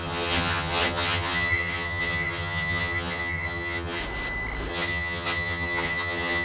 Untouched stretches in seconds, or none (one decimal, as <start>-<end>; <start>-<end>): 4.0-4.7